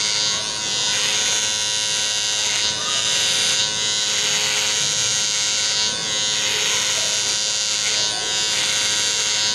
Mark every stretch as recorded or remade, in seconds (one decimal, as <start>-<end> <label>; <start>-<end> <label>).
0.0-2.8 recorded; 2.8-3.6 remade; 3.6-9.5 recorded